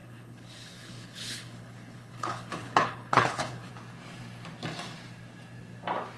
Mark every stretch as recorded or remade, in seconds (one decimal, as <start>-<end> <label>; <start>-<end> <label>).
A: 0.0-3.7 remade; 3.7-6.2 recorded